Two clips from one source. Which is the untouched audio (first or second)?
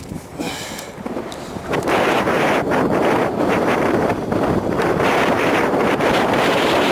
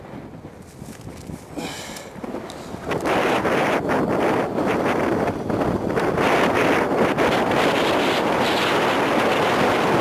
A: second